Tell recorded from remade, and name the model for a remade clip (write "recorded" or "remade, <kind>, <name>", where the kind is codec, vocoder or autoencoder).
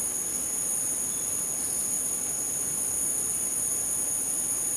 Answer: recorded